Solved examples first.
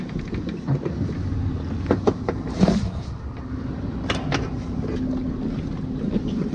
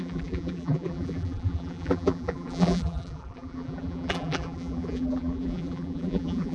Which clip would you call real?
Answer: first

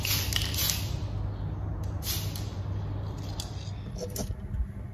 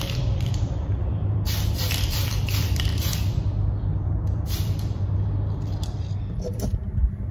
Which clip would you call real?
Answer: first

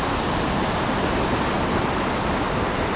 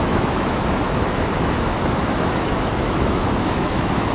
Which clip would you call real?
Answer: first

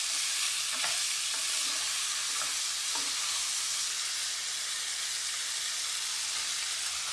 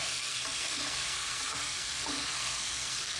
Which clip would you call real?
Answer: first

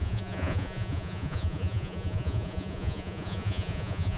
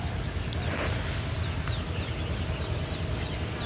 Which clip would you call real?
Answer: second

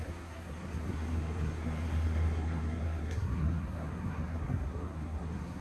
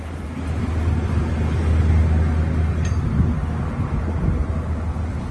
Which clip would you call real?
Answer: second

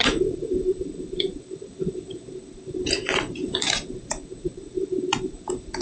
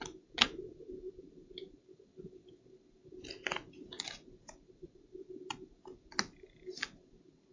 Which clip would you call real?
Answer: second